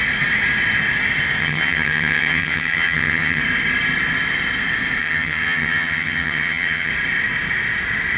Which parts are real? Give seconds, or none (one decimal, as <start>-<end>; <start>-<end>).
0.0-1.4; 3.4-5.0; 6.9-8.2